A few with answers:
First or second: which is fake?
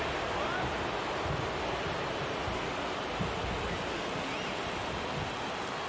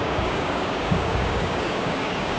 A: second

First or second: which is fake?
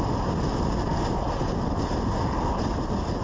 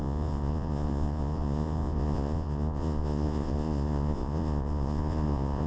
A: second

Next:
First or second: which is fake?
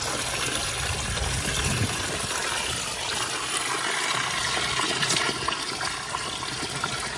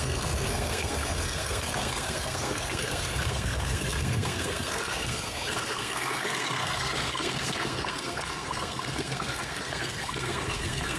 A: second